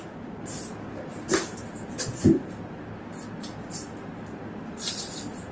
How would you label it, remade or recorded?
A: recorded